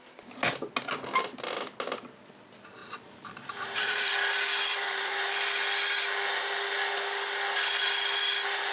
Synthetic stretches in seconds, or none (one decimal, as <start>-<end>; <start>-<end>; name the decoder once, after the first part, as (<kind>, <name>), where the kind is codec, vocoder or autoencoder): 2.8-4.1 (vocoder, BigVGAN v2); 4.7-5.3